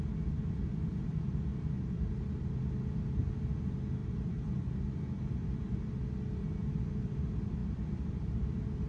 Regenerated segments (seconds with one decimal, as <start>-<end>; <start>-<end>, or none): 1.5-2.1; 4.0-4.7; 7.6-8.9